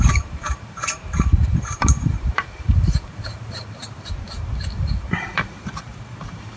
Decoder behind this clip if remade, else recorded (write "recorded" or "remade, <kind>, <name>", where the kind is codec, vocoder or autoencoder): remade, vocoder, BigVGAN v2